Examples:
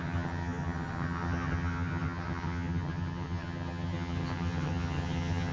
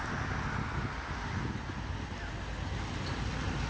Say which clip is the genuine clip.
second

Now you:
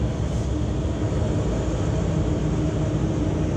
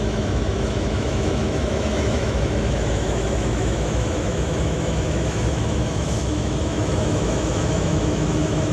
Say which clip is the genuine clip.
first